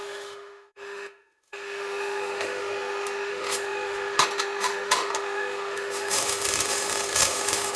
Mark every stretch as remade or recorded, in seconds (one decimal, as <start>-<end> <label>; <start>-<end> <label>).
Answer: 0.0-7.8 remade